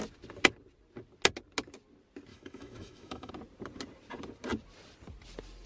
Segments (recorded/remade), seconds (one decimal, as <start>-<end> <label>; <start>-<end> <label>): 0.0-2.3 recorded; 2.3-3.3 remade; 3.3-5.7 recorded